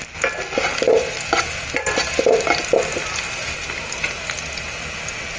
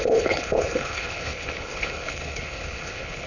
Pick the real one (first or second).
first